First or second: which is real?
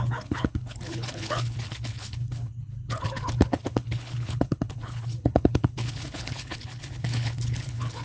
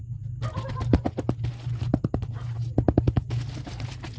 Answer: second